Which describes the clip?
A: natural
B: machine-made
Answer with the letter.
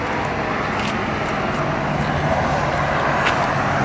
A